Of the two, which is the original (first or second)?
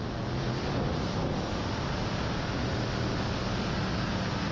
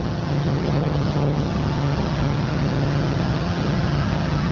first